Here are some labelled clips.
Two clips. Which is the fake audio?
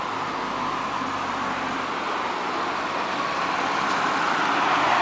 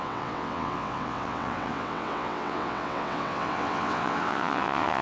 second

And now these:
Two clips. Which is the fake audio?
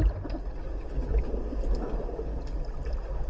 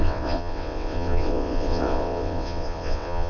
second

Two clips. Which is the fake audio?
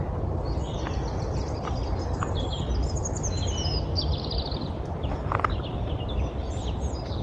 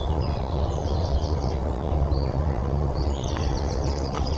second